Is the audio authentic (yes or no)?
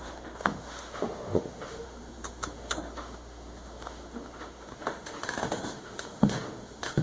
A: no